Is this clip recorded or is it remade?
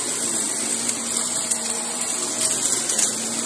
recorded